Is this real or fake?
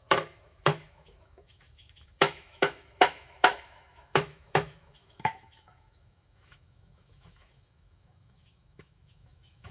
fake